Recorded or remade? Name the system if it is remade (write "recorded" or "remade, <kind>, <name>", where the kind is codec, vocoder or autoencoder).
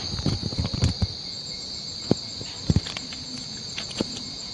recorded